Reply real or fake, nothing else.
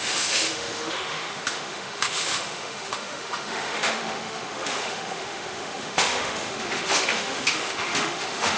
fake